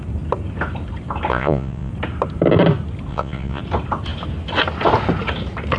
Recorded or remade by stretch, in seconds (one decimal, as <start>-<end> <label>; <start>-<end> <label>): 0.0-1.3 recorded; 1.3-1.9 remade; 1.9-3.1 recorded; 3.1-3.6 remade; 3.6-5.8 recorded